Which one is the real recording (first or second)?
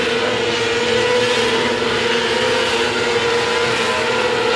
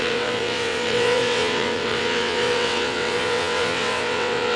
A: first